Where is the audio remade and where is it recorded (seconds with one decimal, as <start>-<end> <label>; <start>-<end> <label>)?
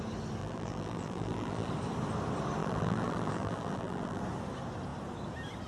0.0-0.4 recorded; 0.4-1.7 remade; 1.7-2.6 recorded; 2.6-4.2 remade; 4.2-5.7 recorded